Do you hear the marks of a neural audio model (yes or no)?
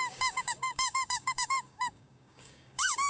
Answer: yes